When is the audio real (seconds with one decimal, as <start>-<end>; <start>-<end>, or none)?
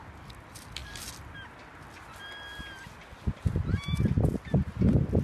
0.0-5.2